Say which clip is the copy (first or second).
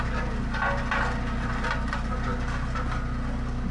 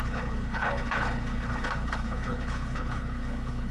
second